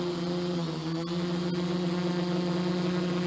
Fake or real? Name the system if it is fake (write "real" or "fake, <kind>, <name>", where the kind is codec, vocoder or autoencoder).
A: real